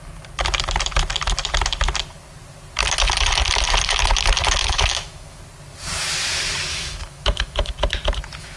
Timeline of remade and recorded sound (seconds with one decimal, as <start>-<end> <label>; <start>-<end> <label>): 0.0-4.6 recorded; 4.6-5.4 remade; 5.4-6.7 recorded; 6.7-7.7 remade; 7.7-8.6 recorded